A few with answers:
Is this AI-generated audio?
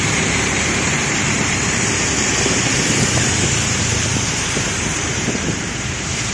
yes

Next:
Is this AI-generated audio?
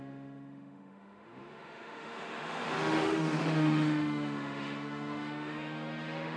yes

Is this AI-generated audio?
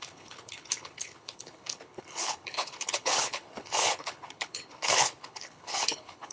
yes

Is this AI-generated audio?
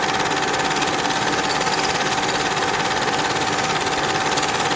no